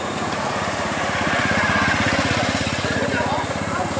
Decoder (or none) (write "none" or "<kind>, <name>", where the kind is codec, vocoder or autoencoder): vocoder, Vocos